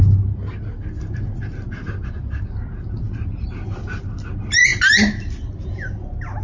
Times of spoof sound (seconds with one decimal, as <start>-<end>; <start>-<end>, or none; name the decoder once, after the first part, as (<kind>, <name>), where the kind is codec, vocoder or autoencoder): none